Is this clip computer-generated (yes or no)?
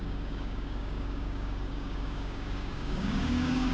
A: yes